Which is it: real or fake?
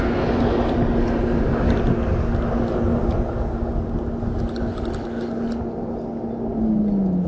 real